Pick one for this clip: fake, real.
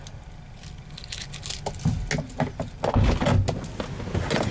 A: real